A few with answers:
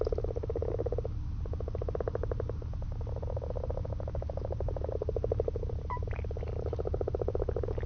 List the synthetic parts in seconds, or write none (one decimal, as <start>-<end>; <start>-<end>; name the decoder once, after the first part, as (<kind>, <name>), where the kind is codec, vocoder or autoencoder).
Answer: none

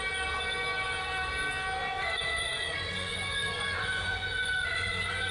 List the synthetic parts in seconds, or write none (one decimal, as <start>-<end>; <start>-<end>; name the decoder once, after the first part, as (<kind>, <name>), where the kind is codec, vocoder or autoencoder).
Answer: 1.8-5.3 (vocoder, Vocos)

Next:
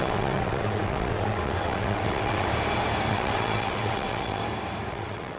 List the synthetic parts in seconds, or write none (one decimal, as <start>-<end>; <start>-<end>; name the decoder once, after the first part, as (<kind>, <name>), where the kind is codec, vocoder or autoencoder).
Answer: 0.0-2.5 (vocoder, WaveNeXt); 3.1-4.4; 4.9-5.4